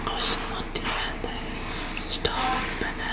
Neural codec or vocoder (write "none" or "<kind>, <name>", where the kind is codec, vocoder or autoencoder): none